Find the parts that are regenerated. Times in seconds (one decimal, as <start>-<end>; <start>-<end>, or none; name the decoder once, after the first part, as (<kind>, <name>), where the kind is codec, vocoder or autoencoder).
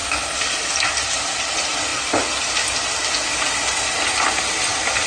none